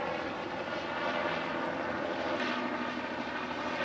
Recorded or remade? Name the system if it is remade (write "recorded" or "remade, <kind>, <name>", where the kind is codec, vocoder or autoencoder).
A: recorded